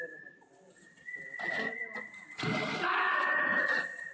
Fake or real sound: real